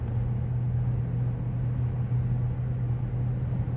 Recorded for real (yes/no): yes